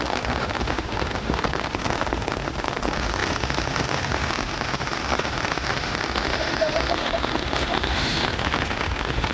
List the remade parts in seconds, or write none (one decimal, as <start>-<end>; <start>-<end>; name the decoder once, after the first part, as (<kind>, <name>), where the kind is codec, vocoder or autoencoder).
0.0-9.3 (autoencoder, DAC-VAE)